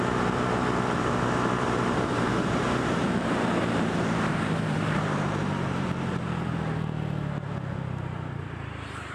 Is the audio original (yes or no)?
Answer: no